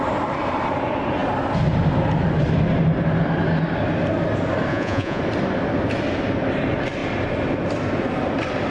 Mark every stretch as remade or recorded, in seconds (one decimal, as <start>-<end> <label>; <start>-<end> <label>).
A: 0.0-4.7 recorded; 4.7-5.2 remade; 5.2-8.7 recorded